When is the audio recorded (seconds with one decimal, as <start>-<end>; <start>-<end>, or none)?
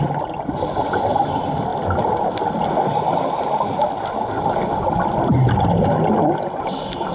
0.0-7.1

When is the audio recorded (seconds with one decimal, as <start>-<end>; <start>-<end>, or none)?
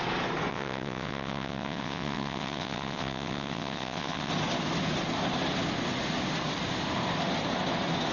0.0-0.5; 4.3-8.1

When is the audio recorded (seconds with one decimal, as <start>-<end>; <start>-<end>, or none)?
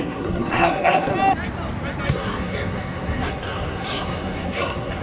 1.1-2.1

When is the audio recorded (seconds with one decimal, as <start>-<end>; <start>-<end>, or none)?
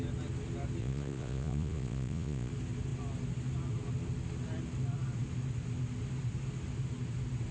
0.0-0.8; 2.5-7.5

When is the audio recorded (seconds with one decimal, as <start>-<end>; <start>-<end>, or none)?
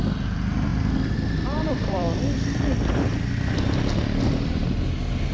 0.0-0.7; 3.8-5.3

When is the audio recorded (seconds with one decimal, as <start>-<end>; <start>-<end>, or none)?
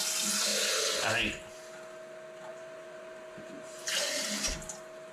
0.0-2.5; 4.4-5.1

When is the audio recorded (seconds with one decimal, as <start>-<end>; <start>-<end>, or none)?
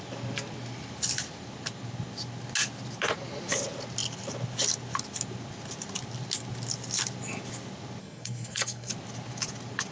0.0-8.0; 8.9-9.9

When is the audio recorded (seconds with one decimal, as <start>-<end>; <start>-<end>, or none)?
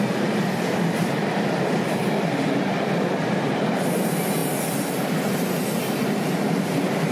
0.0-7.1